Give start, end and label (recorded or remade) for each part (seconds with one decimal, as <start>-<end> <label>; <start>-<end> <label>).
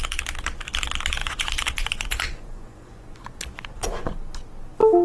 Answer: 0.0-1.2 recorded; 1.2-4.2 remade; 4.2-5.0 recorded